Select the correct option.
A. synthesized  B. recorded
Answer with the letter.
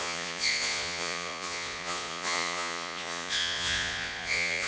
A